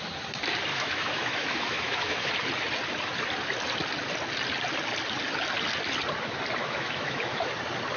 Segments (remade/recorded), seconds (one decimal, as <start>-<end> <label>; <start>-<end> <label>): 0.0-0.7 recorded; 0.7-2.3 remade; 2.3-6.6 recorded; 6.6-7.5 remade; 7.5-8.0 recorded